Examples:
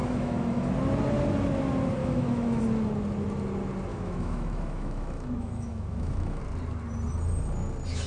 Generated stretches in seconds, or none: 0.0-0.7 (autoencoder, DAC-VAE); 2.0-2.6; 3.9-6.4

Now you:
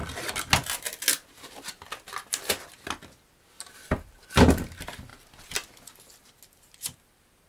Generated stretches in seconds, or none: none

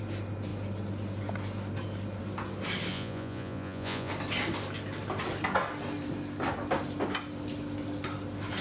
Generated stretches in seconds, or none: 2.9-4.1 (vocoder, Vocos)

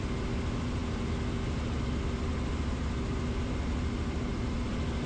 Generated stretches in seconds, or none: none

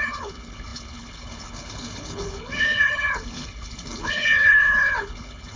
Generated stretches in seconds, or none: 0.0-5.6 (codec, HILCodec)

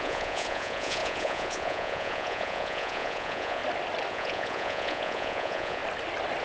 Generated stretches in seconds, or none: 0.0-3.6 (vocoder, Vocos); 4.1-5.8

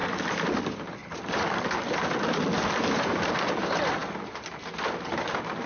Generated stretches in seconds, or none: none